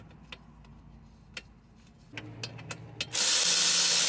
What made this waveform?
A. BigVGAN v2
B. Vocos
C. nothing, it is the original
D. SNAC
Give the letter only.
C